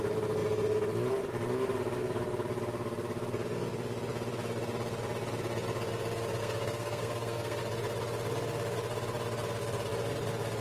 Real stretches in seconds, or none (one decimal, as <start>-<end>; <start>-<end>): 0.0-6.4; 7.6-10.6